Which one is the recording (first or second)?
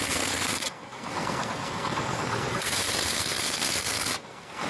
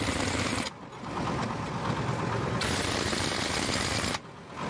second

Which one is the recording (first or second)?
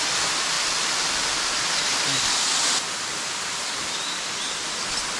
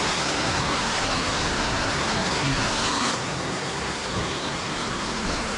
first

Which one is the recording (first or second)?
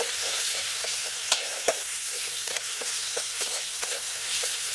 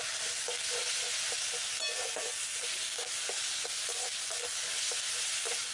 second